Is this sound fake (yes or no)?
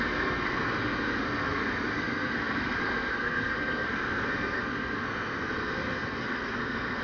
yes